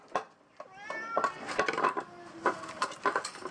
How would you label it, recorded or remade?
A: recorded